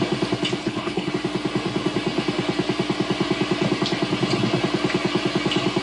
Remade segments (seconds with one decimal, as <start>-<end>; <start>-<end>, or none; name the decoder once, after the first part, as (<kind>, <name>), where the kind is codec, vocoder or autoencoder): 0.6-1.1 (codec, HILCodec)